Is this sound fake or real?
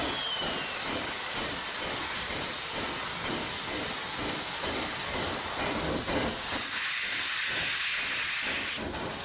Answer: real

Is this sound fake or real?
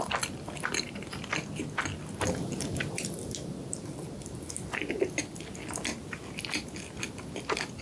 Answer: real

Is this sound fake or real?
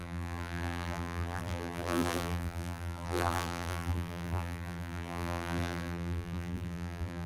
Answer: fake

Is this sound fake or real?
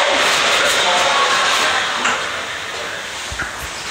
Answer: real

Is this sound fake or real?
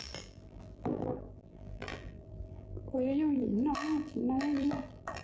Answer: fake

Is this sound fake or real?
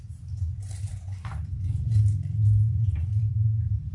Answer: fake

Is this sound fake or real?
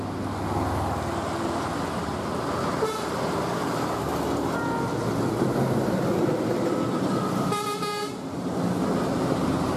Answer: real